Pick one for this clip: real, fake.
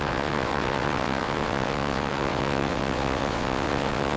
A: fake